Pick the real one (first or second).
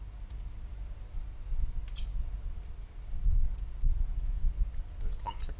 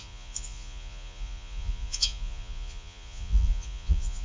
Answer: first